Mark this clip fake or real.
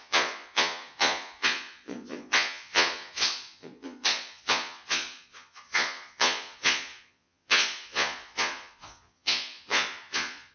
fake